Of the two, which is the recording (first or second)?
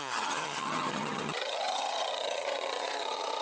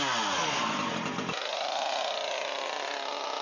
second